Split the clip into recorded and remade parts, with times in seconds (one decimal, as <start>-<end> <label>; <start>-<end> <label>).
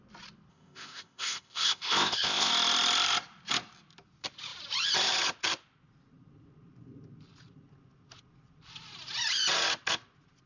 0.0-0.5 recorded; 0.5-2.5 remade; 2.5-10.5 recorded